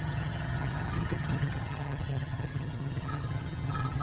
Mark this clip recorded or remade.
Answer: remade